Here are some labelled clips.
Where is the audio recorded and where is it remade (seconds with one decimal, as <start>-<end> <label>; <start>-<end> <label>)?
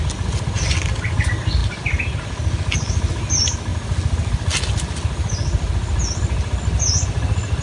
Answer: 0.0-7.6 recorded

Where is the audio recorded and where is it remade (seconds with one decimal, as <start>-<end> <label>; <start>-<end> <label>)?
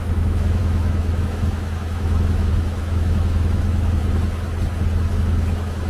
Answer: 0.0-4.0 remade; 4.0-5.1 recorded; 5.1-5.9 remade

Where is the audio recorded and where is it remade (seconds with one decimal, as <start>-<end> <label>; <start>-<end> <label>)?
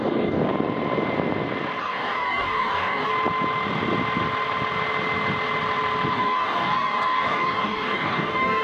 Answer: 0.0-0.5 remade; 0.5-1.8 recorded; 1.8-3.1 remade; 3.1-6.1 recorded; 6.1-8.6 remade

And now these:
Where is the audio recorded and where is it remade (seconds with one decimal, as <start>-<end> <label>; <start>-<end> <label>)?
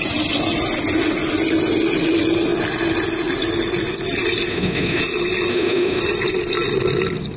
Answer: 0.0-4.5 recorded; 4.5-5.0 remade; 5.0-5.5 recorded; 5.5-6.0 remade; 6.0-7.4 recorded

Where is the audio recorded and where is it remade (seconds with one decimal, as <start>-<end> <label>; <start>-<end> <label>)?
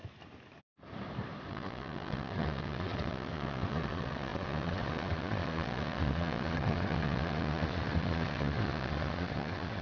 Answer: 0.0-1.5 recorded; 1.5-9.8 remade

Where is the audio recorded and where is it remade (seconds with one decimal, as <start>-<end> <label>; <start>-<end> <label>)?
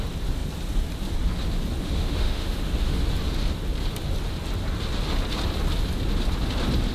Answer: 0.0-1.8 recorded; 1.8-3.0 remade; 3.0-6.9 recorded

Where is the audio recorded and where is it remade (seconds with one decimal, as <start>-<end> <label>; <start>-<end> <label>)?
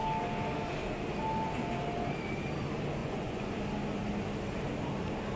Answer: 0.0-3.0 recorded; 3.0-3.5 remade; 3.5-5.4 recorded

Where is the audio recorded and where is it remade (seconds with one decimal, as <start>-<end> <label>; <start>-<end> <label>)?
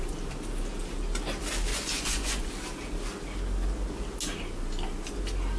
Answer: 0.0-1.7 recorded; 1.7-2.5 remade; 2.5-5.6 recorded